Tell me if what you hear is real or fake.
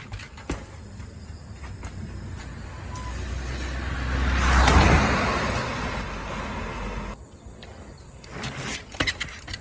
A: real